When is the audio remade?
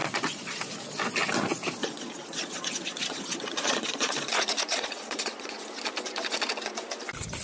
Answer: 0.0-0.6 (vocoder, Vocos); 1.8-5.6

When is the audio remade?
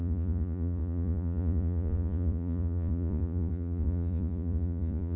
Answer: 0.0-5.2 (vocoder, Vocos)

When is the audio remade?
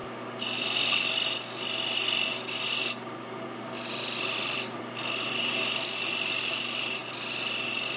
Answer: none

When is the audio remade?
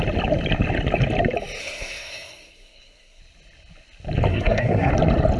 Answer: 1.6-3.2 (codec, SNAC); 4.3-4.9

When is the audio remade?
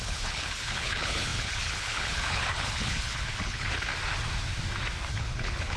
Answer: 0.0-3.9 (codec, HILCodec); 5.1-5.8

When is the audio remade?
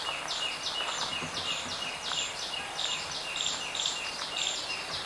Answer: none